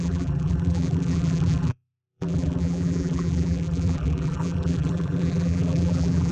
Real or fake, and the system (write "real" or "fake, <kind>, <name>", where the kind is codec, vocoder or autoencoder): fake, vocoder, BigVGAN v2